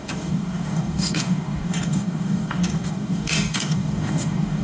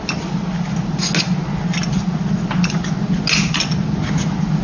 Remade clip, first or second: first